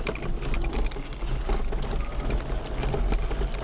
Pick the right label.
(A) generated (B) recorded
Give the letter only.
B